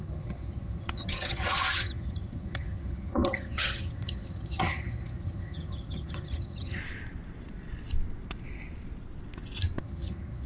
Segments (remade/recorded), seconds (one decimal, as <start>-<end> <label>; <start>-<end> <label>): 0.0-6.8 remade; 6.8-9.8 recorded; 9.8-10.5 remade